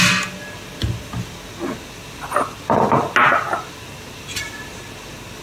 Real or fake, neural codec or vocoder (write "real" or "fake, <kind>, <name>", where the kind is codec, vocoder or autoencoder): real